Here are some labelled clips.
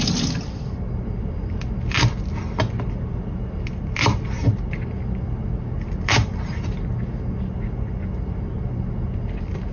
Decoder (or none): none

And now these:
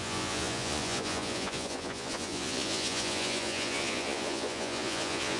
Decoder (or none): vocoder, Vocos